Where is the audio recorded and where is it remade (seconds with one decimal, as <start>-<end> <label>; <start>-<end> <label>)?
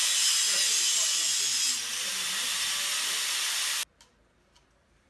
0.0-5.1 recorded